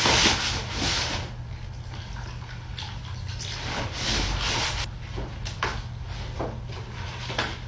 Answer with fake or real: real